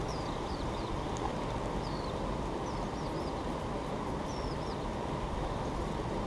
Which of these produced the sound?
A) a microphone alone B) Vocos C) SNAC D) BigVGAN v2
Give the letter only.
A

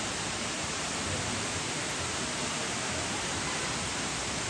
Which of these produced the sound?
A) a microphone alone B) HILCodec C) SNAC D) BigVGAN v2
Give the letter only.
A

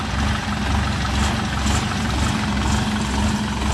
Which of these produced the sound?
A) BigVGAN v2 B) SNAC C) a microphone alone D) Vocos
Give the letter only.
C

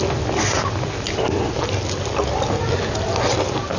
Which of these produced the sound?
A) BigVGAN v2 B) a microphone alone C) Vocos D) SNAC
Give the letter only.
B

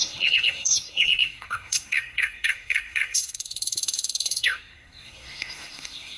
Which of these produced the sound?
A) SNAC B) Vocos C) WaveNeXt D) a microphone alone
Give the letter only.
A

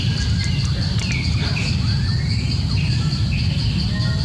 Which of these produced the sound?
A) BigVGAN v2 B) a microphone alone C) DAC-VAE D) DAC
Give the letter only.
B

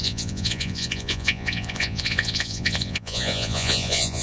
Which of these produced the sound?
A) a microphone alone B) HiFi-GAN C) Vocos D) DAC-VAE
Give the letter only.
C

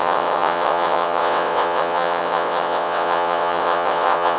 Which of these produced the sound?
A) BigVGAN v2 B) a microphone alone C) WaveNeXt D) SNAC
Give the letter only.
C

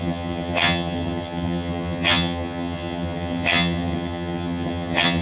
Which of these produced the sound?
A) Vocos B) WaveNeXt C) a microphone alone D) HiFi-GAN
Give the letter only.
D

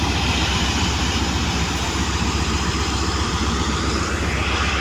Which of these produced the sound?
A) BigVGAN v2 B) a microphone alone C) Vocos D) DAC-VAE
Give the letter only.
A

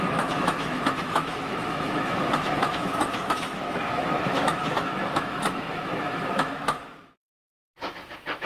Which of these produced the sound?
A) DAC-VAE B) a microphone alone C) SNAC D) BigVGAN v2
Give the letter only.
A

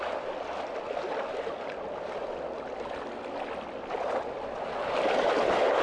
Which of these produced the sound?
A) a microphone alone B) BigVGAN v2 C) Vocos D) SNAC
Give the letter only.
A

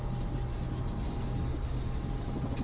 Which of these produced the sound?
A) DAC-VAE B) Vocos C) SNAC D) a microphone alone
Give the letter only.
D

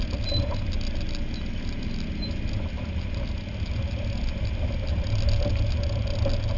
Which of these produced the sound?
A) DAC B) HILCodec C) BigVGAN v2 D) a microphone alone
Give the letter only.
D